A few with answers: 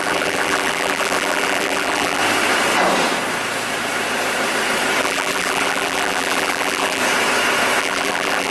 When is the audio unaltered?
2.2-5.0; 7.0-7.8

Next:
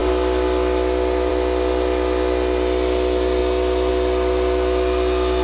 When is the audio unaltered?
0.0-5.4

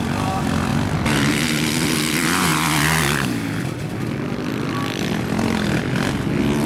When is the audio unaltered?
0.0-6.7

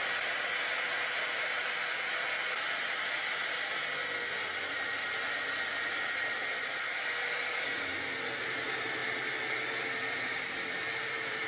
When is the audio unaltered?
0.5-4.3; 7.9-8.4; 9.0-9.8

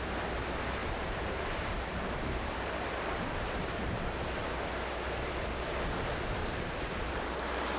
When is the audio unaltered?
0.0-0.8; 4.2-6.4; 7.2-7.8

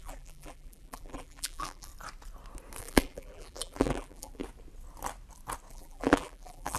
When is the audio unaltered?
1.9-2.8; 4.4-5.7

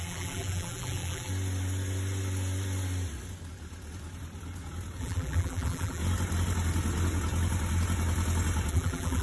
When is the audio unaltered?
1.3-5.0; 6.0-8.7

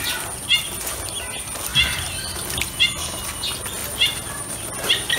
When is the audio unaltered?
0.0-3.8; 4.3-5.2